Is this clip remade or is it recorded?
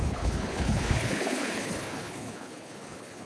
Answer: remade